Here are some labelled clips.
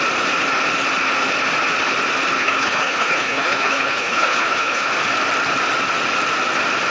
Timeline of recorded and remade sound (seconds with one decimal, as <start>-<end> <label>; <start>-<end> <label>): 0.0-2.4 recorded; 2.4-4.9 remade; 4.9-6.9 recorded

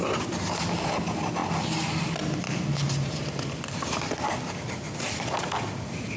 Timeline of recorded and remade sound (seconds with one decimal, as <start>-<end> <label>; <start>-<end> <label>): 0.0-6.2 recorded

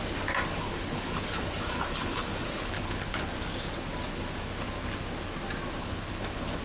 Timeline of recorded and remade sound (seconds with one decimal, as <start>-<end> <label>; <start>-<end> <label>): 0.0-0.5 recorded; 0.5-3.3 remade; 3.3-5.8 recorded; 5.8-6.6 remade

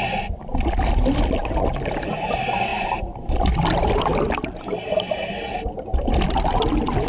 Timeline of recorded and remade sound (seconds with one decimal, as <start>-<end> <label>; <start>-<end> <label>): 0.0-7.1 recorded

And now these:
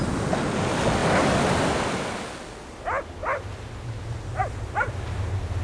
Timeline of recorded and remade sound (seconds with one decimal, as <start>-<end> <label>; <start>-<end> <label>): 0.0-5.6 recorded

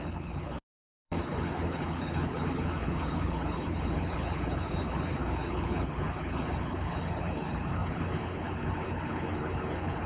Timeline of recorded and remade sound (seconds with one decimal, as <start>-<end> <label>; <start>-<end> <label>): 0.0-10.1 remade

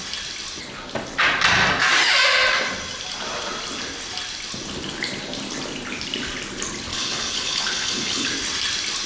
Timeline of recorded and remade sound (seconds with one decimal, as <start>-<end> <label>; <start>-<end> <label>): 0.0-6.9 recorded; 6.9-8.3 remade; 8.3-9.1 recorded

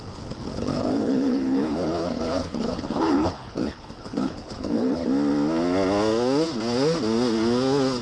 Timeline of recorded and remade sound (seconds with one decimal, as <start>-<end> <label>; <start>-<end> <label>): 0.0-5.0 remade; 5.0-8.0 recorded